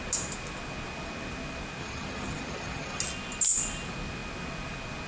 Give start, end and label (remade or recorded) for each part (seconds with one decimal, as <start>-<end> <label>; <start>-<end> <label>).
0.0-1.8 recorded; 1.8-3.0 remade; 3.0-5.1 recorded